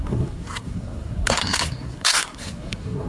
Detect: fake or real fake